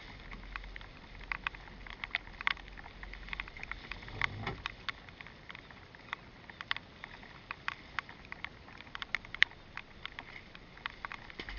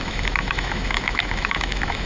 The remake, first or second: second